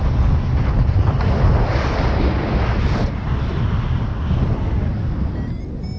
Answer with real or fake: real